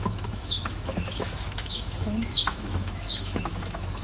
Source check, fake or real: fake